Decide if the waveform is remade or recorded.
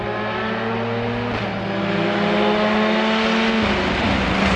recorded